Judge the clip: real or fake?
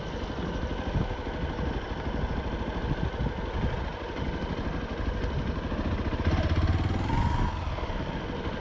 real